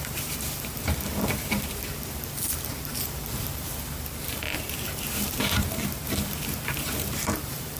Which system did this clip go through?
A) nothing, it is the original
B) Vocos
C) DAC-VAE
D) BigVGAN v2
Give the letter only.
D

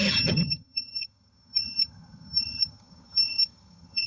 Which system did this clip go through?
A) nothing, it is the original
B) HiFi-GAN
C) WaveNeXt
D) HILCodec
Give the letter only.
B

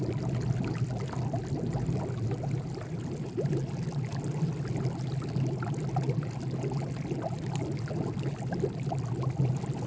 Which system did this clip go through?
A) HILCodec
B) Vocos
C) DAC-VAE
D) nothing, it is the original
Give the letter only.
D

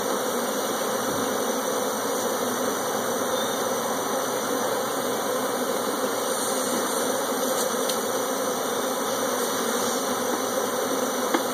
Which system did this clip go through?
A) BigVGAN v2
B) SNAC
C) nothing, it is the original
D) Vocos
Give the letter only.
C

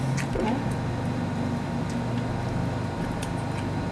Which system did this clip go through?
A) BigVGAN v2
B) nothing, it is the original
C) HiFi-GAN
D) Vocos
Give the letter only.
B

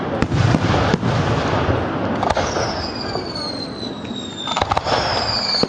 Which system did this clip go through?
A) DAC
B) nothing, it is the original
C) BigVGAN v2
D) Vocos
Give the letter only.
B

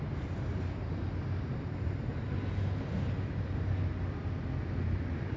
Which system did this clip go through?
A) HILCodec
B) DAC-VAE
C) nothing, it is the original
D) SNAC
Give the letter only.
C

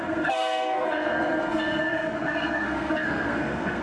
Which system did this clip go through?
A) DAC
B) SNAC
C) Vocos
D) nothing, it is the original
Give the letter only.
B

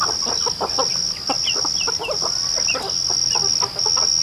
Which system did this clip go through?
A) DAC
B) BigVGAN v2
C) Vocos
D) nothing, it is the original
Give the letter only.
D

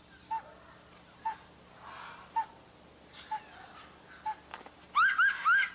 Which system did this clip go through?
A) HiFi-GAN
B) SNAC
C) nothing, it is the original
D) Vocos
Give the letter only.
C